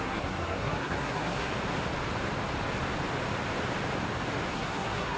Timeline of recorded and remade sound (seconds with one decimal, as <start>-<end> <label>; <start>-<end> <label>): 0.0-1.5 remade; 1.5-4.5 recorded; 4.5-5.2 remade